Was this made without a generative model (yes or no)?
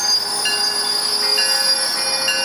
yes